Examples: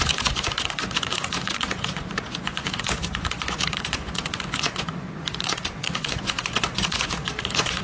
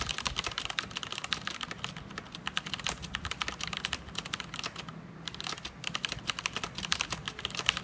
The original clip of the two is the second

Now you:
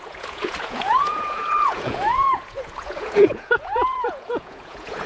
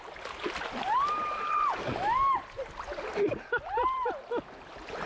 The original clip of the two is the second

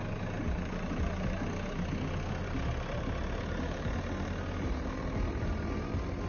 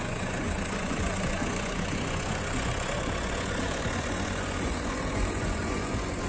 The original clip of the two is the first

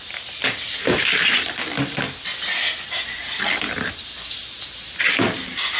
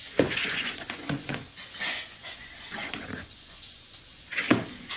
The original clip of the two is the first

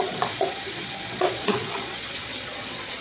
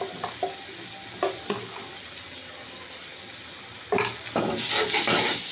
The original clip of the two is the second